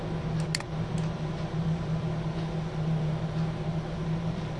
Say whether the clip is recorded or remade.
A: recorded